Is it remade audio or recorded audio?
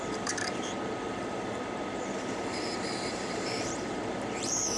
remade